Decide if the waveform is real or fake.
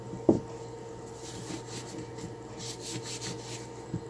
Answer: real